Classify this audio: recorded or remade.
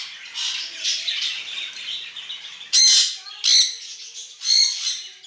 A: recorded